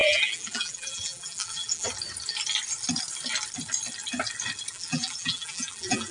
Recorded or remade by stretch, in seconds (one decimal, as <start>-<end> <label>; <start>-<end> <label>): 0.0-1.9 remade; 1.9-4.7 recorded; 4.7-6.1 remade